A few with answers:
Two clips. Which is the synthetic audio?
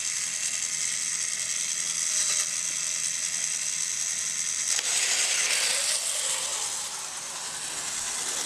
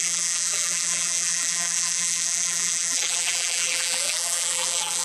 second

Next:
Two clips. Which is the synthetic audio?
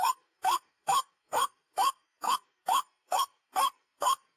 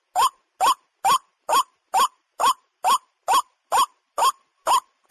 first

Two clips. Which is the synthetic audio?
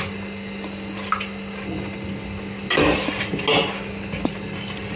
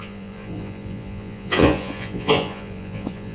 second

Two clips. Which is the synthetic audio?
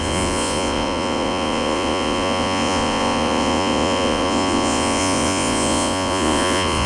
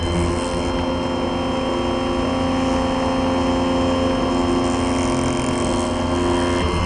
first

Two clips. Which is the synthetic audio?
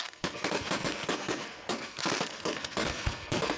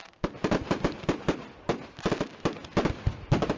first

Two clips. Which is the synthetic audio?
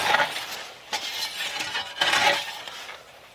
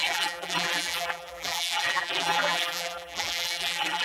second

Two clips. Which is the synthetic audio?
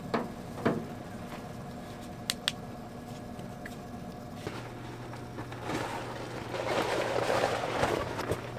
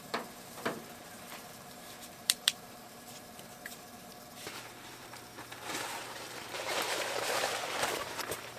second